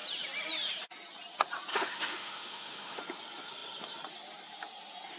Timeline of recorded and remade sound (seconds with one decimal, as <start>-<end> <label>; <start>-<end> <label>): 0.0-1.7 recorded; 1.7-3.0 remade; 3.0-5.2 recorded